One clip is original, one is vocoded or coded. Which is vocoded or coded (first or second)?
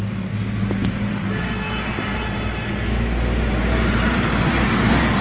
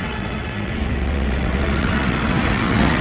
second